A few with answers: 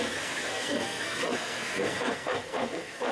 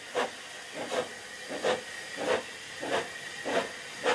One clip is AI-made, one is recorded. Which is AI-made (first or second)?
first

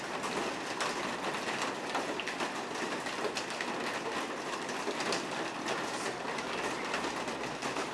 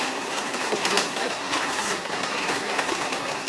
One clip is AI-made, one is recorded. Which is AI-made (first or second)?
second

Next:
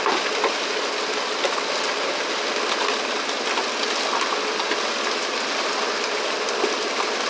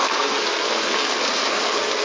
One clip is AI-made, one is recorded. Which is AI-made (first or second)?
second